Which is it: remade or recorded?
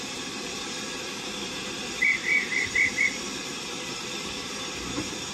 remade